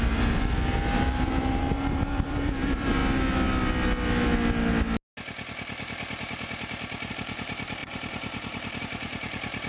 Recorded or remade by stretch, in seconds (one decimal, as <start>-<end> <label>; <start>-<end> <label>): 0.0-3.0 remade; 3.0-7.1 recorded; 7.1-9.7 remade